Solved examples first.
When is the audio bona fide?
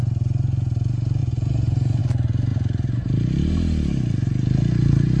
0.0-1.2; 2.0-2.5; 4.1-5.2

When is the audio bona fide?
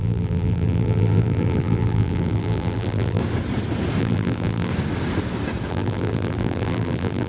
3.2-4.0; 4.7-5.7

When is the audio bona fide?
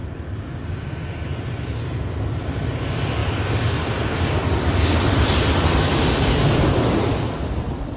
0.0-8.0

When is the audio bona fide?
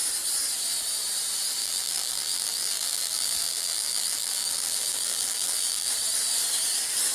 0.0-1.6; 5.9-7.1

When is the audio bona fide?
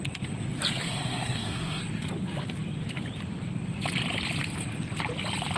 0.0-0.8; 1.8-5.6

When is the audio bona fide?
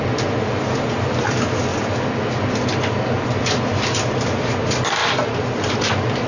0.0-6.3